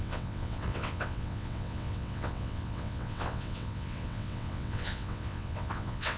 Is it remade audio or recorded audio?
remade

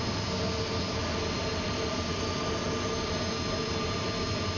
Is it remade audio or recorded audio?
recorded